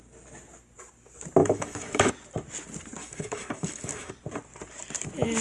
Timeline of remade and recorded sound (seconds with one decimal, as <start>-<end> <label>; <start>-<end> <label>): 0.0-1.4 recorded; 1.4-2.1 remade; 2.1-3.0 recorded; 3.0-4.1 remade; 4.1-5.4 recorded

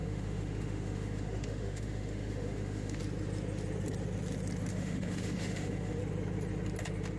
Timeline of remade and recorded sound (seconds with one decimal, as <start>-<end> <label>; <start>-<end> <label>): 0.0-3.0 remade; 3.0-4.7 recorded; 4.7-6.0 remade; 6.0-7.2 recorded

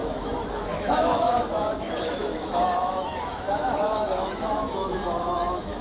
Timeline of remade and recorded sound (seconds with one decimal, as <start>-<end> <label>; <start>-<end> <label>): 0.0-5.8 remade

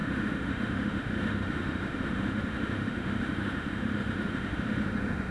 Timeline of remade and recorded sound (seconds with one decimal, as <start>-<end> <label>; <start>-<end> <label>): 0.0-5.3 remade

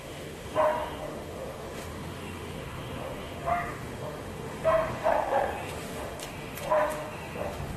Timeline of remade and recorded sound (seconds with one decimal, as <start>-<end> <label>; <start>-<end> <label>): 0.0-7.8 remade

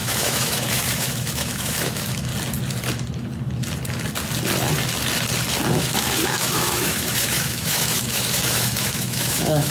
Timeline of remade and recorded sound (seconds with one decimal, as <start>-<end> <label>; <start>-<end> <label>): 0.0-2.3 remade; 2.3-5.7 recorded; 5.7-9.7 remade

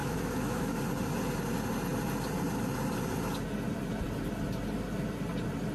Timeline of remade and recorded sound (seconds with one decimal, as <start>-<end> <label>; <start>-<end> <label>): 0.0-0.8 remade; 0.8-5.7 recorded